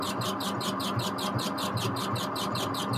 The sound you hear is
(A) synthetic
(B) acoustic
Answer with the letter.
B